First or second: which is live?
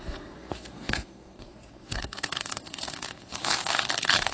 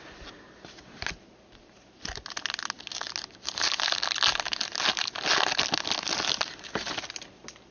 second